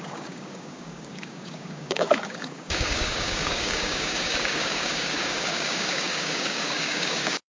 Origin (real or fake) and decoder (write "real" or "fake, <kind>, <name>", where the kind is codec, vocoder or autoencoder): fake, codec, DAC